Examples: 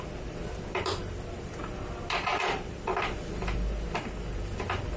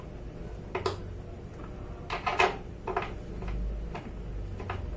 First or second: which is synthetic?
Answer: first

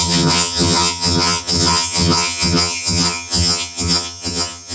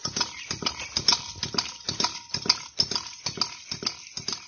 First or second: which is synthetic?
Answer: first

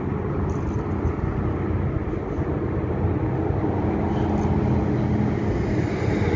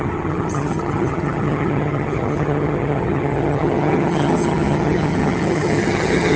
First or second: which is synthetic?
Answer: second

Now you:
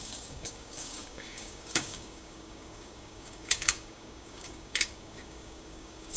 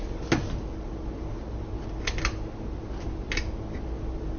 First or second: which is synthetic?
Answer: first